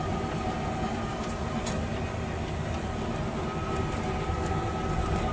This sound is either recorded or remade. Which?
recorded